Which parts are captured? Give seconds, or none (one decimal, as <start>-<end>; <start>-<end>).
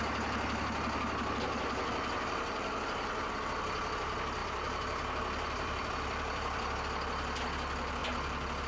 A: 0.0-4.4; 6.8-8.7